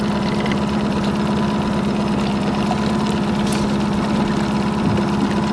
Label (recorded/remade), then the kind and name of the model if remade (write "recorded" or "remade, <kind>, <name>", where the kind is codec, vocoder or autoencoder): recorded